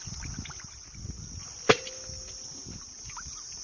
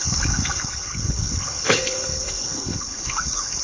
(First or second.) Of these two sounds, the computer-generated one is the second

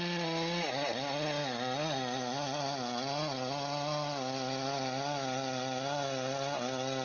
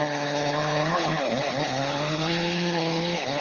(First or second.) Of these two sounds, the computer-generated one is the second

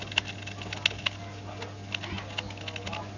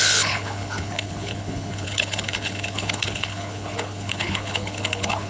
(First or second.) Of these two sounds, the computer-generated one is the second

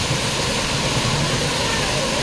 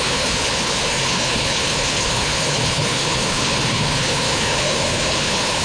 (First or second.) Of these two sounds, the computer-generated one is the second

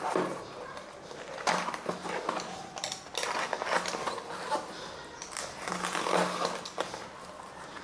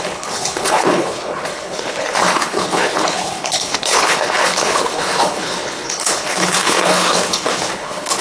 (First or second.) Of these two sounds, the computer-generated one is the second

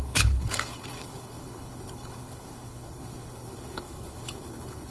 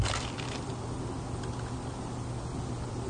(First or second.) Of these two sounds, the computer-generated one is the first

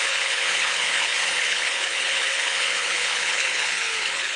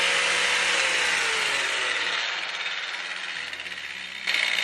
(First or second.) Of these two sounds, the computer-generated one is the first